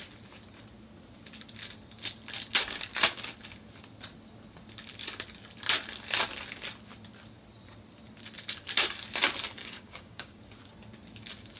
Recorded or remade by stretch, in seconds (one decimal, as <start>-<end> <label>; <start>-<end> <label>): 0.0-9.6 recorded; 9.6-10.4 remade; 10.4-11.6 recorded